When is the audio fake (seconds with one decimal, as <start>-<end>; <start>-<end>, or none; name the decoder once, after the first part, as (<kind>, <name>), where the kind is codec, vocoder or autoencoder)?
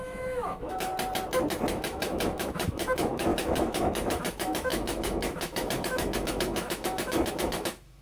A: 0.0-0.9 (autoencoder, DAC-VAE); 1.7-8.0